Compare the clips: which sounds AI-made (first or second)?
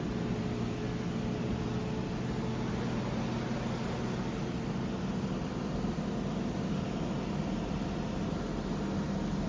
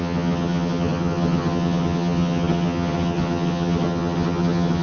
second